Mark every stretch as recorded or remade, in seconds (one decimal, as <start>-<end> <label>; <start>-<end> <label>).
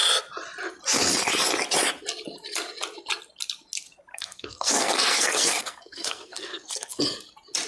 0.0-4.1 recorded; 4.1-7.0 remade; 7.0-7.7 recorded